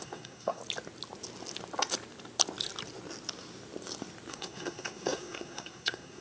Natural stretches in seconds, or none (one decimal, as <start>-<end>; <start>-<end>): 0.6-4.3